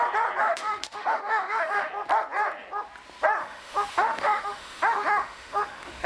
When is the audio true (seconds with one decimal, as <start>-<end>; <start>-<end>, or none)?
0.0-0.4; 1.9-3.4